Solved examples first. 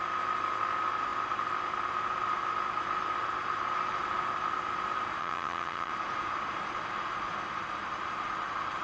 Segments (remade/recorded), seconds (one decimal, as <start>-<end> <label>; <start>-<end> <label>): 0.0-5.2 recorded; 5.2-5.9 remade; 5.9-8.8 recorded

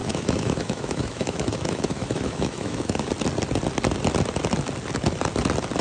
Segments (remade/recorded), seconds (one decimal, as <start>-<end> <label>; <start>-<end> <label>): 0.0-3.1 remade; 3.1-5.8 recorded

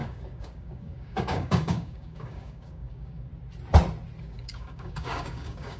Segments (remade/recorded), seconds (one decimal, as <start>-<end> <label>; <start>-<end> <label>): 0.0-3.3 remade; 3.3-4.2 recorded; 4.2-5.8 remade

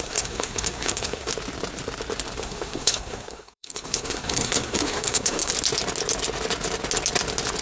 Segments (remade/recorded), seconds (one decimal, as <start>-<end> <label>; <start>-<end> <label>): 0.0-1.3 remade; 1.3-2.4 recorded; 2.4-5.5 remade; 5.5-7.6 recorded

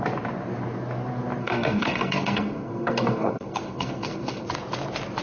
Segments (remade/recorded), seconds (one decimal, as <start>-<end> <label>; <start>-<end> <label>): 0.0-1.4 recorded; 1.4-4.5 remade; 4.5-5.2 recorded

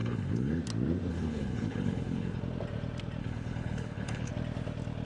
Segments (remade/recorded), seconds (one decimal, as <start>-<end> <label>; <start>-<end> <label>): 0.0-0.6 remade; 0.6-1.1 recorded; 1.1-2.4 remade; 2.4-3.2 recorded; 3.2-4.3 remade; 4.3-5.0 recorded